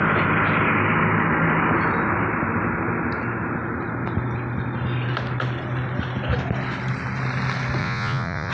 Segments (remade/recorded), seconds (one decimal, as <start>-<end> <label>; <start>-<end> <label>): 0.0-7.8 recorded; 7.8-8.5 remade